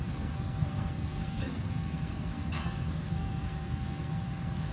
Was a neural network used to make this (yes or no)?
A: yes